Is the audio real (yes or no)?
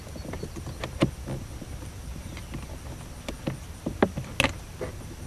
yes